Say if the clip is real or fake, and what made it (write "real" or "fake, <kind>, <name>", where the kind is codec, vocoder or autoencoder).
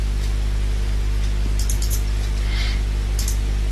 real